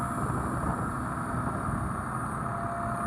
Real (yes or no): yes